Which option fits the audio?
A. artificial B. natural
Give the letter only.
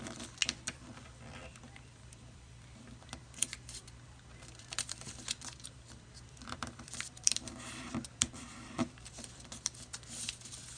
A